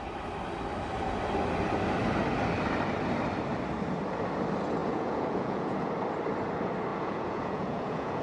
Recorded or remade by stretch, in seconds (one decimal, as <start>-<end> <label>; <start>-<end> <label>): 0.0-4.8 recorded; 4.8-5.9 remade; 5.9-6.9 recorded; 6.9-8.2 remade